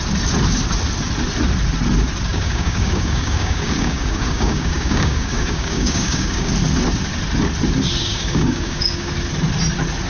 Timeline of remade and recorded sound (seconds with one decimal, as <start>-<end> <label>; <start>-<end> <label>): 0.0-2.3 recorded; 2.3-6.5 remade; 6.5-8.0 recorded; 8.0-9.1 remade; 9.1-10.1 recorded